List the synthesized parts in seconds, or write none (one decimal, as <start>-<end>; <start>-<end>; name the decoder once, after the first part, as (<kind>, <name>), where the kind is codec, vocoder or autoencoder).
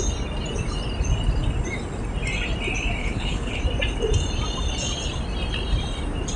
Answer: 3.0-3.6 (codec, HILCodec)